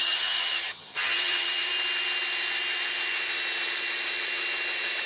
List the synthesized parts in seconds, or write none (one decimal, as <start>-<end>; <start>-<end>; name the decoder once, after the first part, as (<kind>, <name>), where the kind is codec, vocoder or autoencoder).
0.0-1.7 (vocoder, HiFi-GAN)